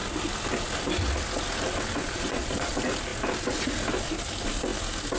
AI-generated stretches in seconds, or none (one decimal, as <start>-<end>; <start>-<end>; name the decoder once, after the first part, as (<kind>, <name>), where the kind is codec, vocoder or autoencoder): 2.0-2.7 (vocoder, WaveNeXt)